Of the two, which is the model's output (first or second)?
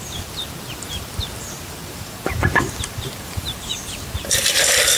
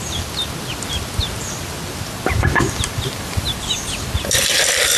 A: first